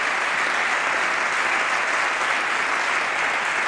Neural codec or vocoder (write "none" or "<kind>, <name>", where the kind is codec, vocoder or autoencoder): none